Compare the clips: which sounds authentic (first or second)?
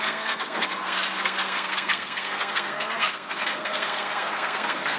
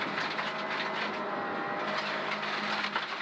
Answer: second